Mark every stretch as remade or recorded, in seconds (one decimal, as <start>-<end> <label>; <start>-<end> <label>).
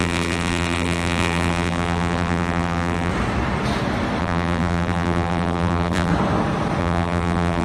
0.0-3.1 remade; 3.1-4.2 recorded; 4.2-6.1 remade; 6.1-6.8 recorded; 6.8-7.6 remade